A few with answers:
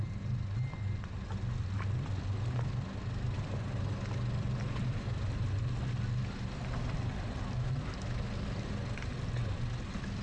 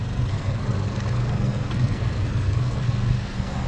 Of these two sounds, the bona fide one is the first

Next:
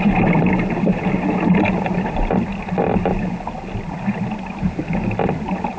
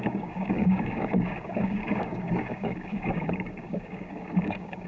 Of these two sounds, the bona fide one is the first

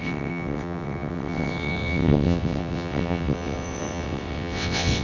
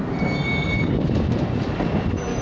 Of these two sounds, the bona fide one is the second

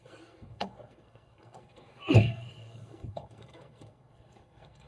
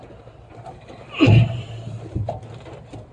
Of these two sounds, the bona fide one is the second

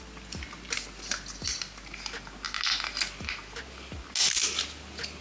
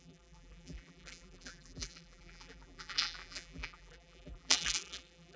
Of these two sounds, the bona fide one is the first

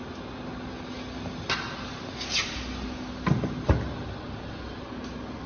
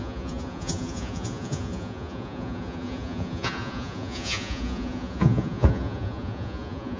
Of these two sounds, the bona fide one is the first